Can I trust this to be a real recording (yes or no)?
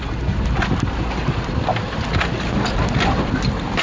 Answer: yes